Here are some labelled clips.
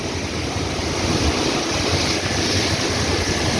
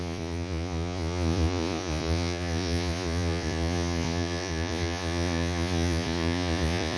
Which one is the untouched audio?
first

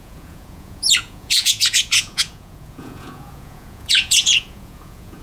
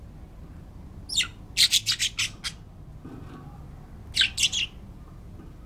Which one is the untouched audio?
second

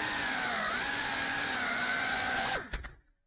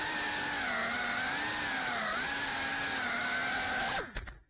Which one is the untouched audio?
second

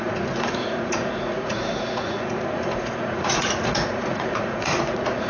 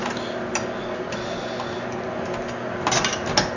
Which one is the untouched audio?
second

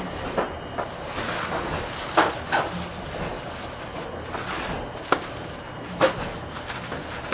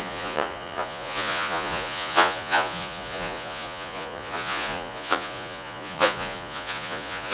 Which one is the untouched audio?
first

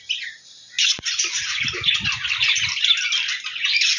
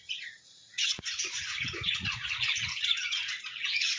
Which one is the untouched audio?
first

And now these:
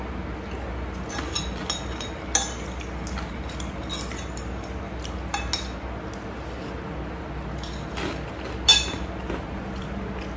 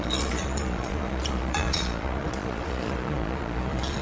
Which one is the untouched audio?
first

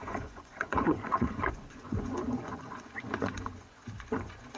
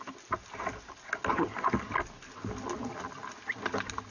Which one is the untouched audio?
second